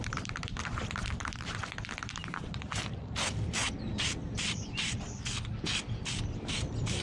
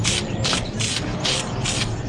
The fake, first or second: first